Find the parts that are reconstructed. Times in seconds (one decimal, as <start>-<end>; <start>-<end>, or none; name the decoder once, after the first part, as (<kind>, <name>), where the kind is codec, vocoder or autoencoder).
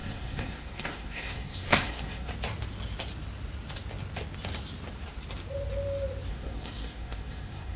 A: 0.0-2.3 (codec, SNAC); 6.3-7.8